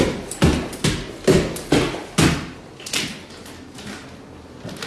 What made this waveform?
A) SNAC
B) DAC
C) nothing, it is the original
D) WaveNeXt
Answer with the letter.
C